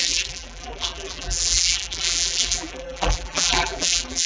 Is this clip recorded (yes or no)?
no